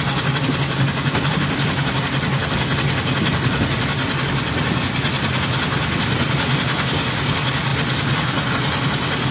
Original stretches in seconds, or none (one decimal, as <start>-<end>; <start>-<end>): 0.0-9.3